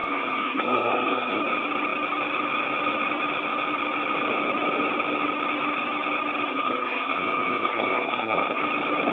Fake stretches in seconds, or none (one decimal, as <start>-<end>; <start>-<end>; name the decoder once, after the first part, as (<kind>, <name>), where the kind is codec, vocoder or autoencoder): 0.0-1.4 (codec, SNAC); 6.5-8.6